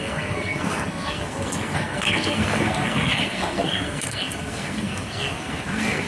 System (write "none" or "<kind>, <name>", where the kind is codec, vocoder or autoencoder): codec, SNAC